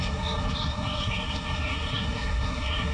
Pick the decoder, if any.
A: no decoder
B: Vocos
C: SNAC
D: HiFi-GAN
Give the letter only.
C